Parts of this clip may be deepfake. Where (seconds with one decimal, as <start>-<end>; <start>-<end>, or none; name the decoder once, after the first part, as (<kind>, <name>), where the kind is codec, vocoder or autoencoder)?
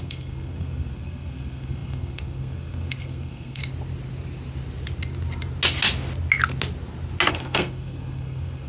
0.0-3.6 (codec, SNAC); 7.3-8.7